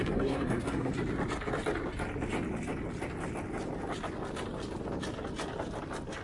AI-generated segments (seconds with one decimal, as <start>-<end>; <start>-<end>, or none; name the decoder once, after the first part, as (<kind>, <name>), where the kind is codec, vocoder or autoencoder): 0.0-0.9 (codec, SNAC)